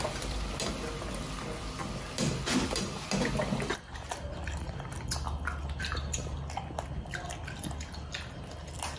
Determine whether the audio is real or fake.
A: real